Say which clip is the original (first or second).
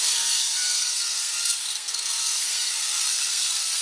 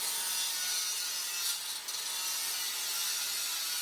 second